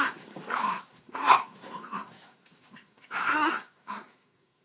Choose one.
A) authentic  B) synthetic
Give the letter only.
B